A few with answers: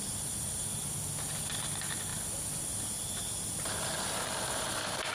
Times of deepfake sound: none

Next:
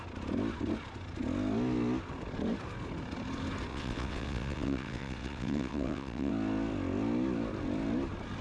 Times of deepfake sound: 3.7-6.3 (vocoder, WaveNeXt)

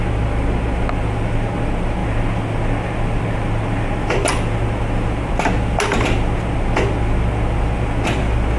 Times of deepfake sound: none

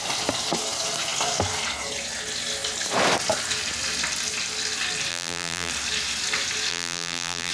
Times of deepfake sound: 5.1-5.7 (vocoder, BigVGAN v2); 6.7-7.5